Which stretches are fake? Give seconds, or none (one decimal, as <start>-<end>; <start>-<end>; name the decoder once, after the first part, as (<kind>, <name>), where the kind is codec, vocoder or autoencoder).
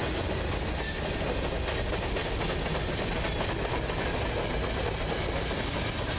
none